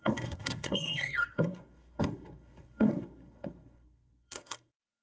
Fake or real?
fake